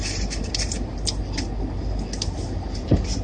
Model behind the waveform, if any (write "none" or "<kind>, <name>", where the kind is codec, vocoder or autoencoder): none